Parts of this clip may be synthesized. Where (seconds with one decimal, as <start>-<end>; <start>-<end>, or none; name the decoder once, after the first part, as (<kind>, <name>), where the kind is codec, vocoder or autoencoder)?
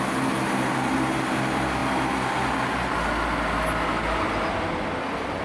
none